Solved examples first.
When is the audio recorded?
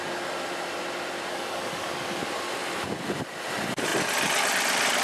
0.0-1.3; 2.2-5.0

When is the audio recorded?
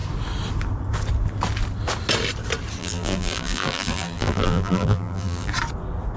0.0-2.8; 5.5-6.2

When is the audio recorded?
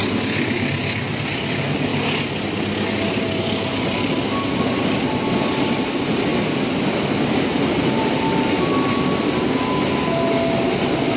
0.0-11.2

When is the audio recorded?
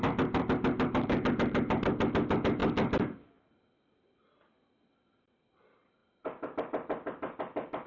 0.0-7.9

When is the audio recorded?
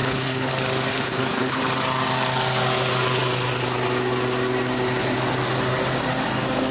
0.5-0.9; 1.6-6.7